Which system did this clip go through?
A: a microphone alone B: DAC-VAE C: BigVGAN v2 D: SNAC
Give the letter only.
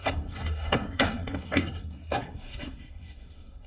D